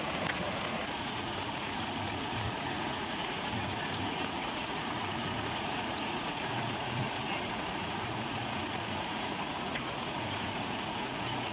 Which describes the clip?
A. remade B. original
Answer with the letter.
A